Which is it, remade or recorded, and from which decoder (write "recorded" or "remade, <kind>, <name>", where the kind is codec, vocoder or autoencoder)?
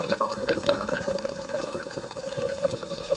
remade, codec, SNAC